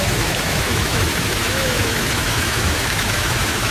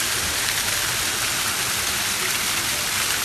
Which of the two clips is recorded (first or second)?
second